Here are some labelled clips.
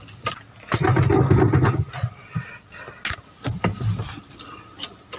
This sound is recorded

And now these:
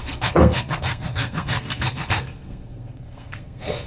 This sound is remade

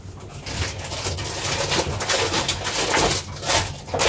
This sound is recorded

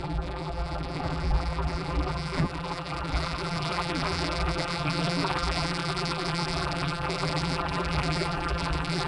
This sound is remade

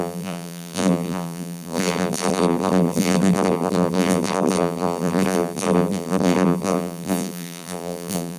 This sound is remade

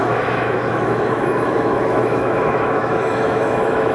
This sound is remade